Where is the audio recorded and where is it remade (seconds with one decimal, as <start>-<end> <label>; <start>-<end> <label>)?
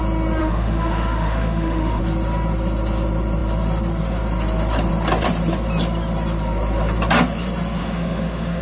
0.0-0.4 recorded; 0.4-2.0 remade; 2.0-7.8 recorded; 7.8-8.6 remade